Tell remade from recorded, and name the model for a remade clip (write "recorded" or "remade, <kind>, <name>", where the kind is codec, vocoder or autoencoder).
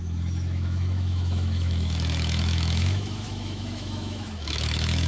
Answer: remade, autoencoder, DAC-VAE